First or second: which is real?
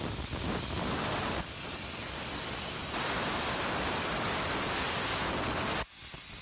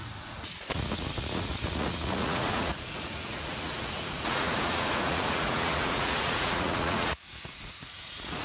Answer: first